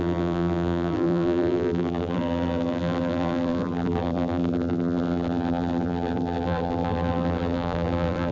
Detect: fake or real fake